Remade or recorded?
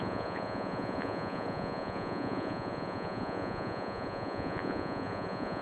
remade